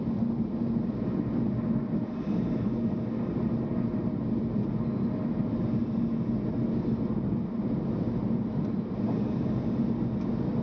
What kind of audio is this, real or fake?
real